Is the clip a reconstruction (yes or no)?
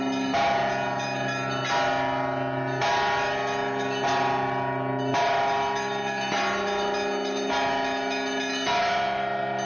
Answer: no